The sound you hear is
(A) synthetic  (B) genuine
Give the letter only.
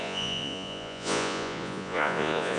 A